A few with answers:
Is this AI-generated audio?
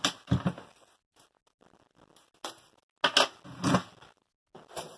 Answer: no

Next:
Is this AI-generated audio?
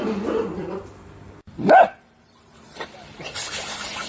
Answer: yes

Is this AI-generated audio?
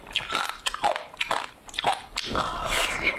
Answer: no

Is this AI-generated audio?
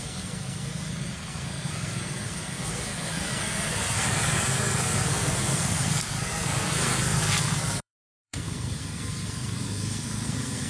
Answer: yes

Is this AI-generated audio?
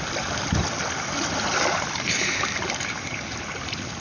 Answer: no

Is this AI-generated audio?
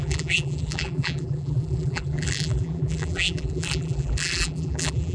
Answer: yes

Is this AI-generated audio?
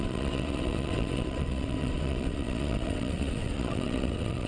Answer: yes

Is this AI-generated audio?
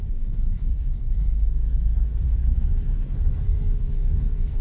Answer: yes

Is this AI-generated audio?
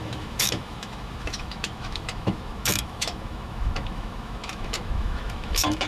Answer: yes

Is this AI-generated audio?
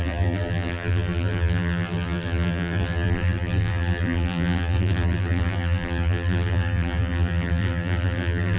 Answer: yes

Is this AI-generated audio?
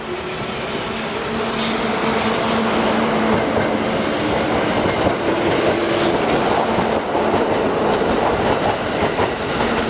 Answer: no